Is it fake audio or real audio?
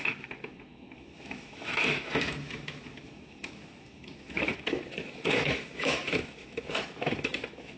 fake